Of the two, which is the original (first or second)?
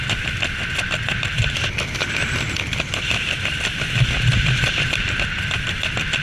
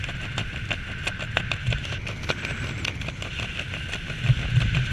second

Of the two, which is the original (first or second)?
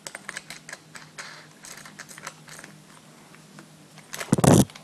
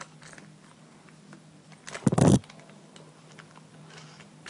first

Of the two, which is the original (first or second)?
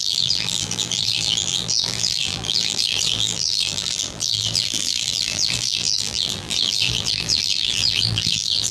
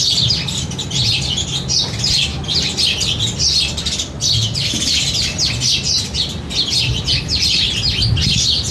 second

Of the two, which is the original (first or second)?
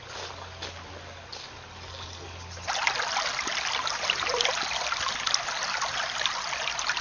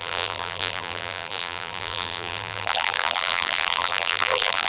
first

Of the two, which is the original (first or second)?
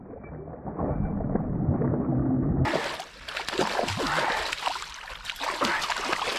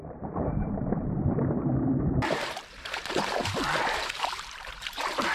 first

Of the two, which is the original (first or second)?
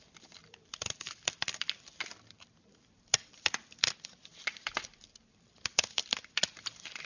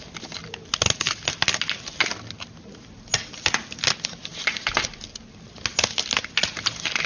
second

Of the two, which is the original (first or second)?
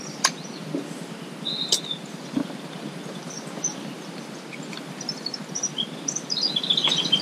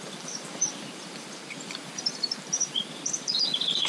first